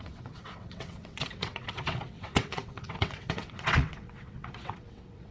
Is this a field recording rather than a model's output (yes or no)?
no